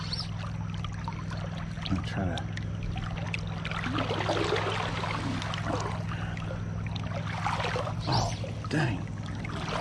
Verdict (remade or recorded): recorded